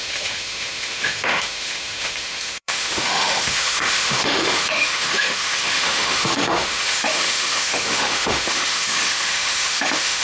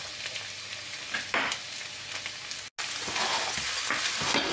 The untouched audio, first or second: second